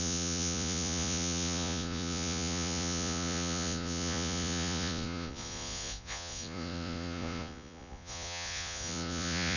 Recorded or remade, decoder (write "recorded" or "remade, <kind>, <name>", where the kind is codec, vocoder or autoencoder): remade, vocoder, Vocos